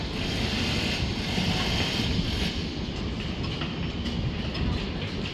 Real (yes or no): yes